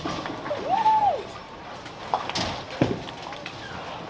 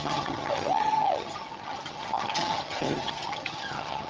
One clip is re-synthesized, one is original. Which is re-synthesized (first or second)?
second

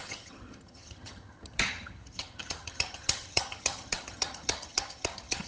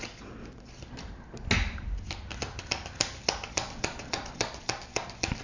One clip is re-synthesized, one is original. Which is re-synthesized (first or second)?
first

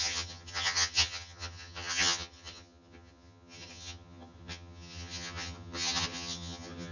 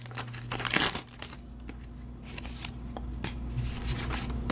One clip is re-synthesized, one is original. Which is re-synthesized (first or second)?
first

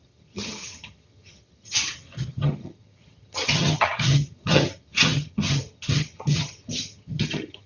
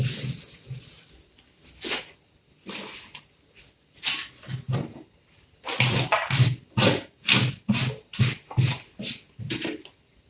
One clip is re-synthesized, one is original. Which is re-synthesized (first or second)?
first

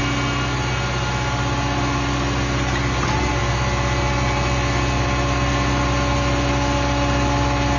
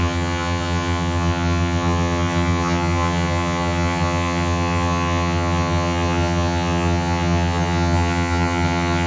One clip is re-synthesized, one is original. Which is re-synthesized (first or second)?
second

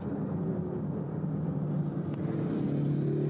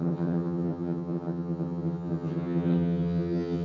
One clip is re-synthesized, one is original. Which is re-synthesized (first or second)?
second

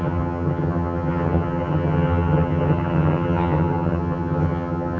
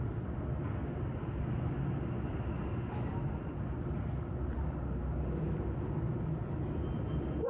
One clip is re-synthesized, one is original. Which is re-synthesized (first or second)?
first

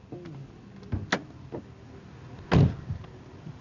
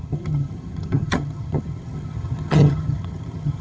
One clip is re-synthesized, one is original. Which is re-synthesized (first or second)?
second